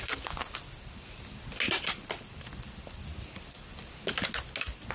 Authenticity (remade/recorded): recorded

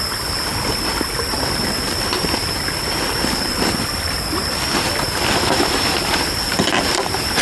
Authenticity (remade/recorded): remade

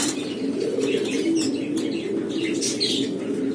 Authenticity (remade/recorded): recorded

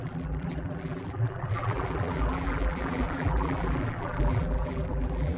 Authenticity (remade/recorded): remade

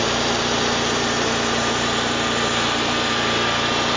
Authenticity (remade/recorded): remade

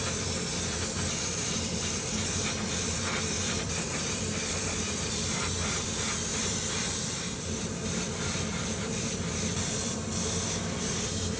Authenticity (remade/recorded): remade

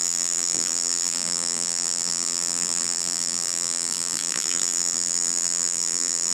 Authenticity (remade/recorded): remade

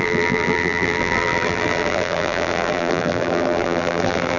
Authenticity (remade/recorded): remade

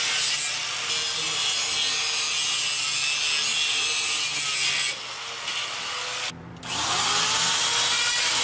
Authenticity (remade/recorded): recorded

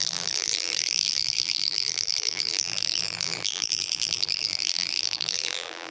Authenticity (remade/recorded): remade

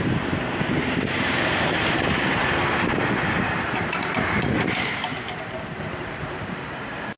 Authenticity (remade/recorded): remade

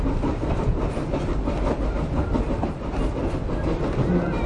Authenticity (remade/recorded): recorded